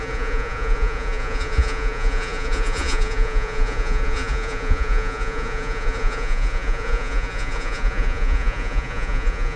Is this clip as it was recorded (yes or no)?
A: no